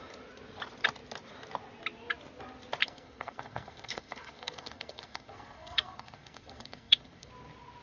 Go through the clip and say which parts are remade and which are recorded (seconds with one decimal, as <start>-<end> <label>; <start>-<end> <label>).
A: 0.0-2.8 recorded; 2.8-7.3 remade; 7.3-7.8 recorded